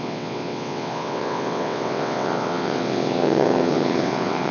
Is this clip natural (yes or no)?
no